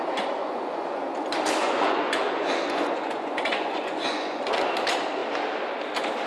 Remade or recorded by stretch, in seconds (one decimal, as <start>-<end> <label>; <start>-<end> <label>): 0.0-0.4 recorded; 0.4-1.0 remade; 1.0-1.6 recorded; 1.6-4.4 remade; 4.4-6.3 recorded